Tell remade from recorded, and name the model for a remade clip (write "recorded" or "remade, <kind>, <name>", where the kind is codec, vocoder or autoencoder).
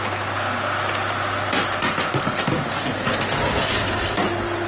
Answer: recorded